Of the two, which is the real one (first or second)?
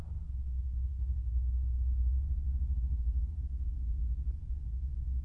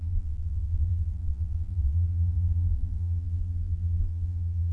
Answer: first